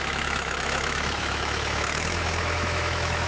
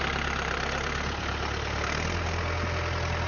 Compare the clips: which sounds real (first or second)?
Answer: second